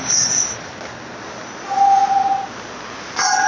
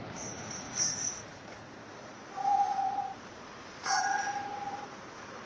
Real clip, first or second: first